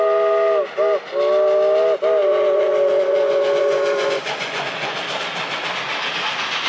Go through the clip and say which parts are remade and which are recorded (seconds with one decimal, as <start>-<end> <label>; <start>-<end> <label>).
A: 0.0-2.2 recorded; 2.2-5.0 remade; 5.0-6.7 recorded